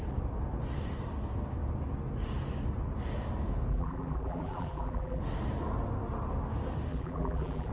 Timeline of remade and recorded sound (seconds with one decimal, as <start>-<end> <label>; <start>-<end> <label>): 0.0-3.7 recorded; 3.7-5.2 remade; 5.2-6.9 recorded; 6.9-7.7 remade